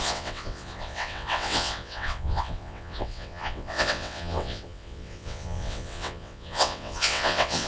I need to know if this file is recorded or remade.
remade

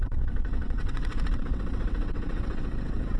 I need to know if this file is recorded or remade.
remade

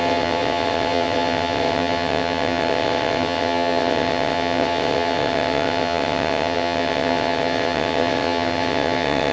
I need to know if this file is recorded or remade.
remade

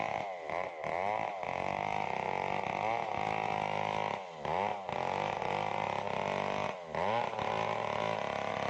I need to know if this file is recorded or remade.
recorded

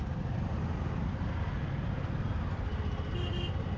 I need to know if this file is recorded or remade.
recorded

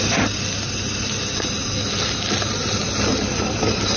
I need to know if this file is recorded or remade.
recorded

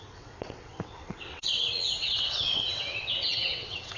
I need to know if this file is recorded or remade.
remade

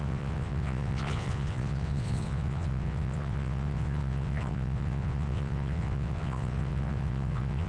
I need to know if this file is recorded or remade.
remade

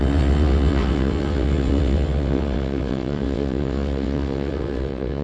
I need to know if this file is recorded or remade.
remade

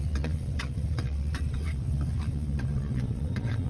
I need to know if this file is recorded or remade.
remade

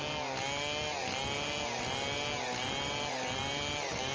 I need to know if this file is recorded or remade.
recorded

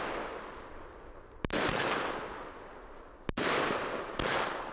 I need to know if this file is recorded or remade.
recorded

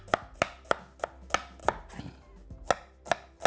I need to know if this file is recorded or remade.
recorded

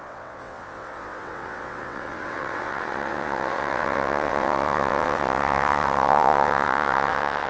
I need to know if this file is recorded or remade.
remade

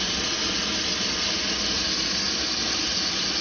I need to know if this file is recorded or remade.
recorded